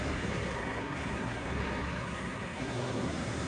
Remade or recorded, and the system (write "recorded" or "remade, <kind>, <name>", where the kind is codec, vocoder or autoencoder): remade, codec, SNAC